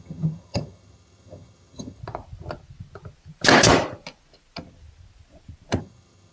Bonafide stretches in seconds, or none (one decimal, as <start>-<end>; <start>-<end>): 2.0-5.8